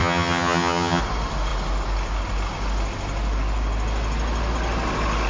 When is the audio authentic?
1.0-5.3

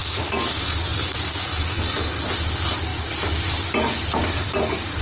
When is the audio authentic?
0.0-5.0

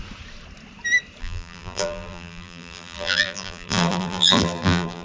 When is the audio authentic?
0.0-1.2

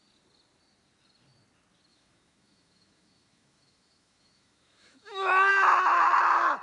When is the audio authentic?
0.0-1.9; 5.5-6.6